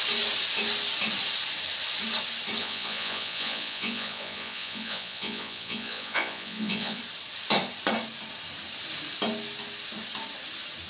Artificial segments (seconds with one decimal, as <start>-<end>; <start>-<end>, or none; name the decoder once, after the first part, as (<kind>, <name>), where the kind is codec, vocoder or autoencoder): 2.6-7.0 (vocoder, Vocos)